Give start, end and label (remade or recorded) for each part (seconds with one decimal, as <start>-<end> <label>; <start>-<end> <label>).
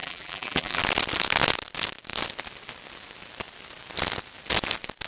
0.0-0.8 remade; 0.8-5.1 recorded